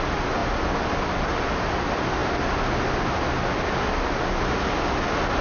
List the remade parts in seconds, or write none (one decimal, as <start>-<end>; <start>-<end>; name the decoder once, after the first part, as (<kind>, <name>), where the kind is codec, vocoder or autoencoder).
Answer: none